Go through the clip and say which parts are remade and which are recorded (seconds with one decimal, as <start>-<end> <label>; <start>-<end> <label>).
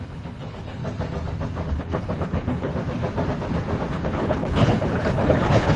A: 0.0-0.8 remade; 0.8-1.7 recorded; 1.7-2.7 remade; 2.7-3.9 recorded; 3.9-5.8 remade